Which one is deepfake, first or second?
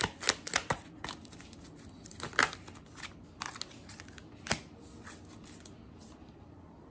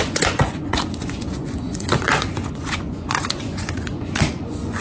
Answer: second